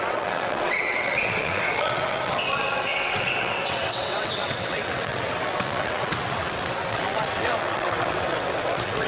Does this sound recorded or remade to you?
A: remade